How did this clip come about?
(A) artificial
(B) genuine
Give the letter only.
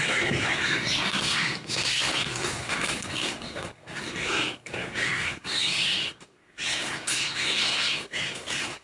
A